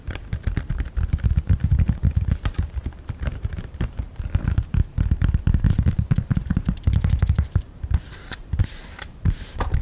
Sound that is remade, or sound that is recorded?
remade